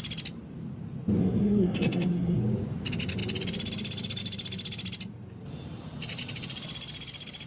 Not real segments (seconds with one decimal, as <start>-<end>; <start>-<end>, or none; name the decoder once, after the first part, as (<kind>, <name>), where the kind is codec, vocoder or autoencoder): 1.2-2.4 (codec, SNAC)